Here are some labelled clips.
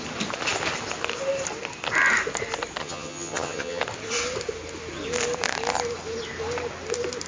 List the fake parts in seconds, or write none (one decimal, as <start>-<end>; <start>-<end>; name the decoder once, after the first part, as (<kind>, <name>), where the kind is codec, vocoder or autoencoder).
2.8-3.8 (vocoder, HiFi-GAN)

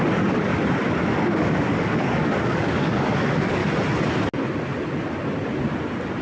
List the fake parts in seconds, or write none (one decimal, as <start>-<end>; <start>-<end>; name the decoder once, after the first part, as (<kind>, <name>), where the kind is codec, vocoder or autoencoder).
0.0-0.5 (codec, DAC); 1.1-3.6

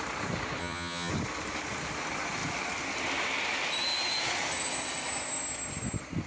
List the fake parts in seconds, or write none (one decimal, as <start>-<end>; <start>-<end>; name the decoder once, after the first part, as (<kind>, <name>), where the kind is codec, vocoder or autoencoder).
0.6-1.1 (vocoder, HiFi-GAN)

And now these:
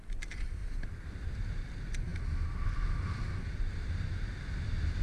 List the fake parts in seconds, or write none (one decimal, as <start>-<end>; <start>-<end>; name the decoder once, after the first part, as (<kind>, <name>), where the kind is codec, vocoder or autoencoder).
none

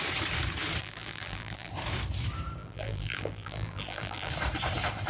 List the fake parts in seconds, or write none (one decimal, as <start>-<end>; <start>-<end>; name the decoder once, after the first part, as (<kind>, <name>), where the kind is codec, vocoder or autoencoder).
0.8-1.7 (vocoder, BigVGAN v2); 2.6-4.3

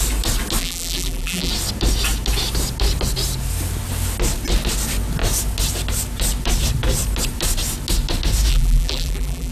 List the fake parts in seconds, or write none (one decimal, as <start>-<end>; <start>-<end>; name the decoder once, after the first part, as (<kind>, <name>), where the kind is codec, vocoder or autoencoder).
0.6-1.5 (vocoder, BigVGAN v2); 8.5-9.5

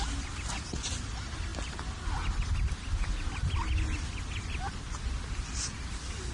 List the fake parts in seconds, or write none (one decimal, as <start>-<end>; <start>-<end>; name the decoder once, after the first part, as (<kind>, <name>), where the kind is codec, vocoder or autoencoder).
none